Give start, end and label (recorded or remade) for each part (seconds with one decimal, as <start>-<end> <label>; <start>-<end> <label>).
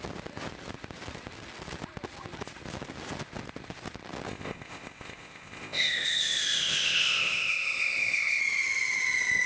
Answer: 0.0-4.3 recorded; 4.3-8.4 remade; 8.4-9.5 recorded